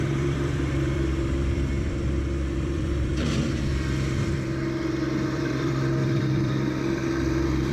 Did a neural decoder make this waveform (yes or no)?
yes